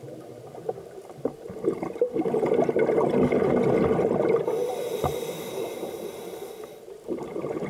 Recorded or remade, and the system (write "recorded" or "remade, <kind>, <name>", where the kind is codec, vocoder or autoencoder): recorded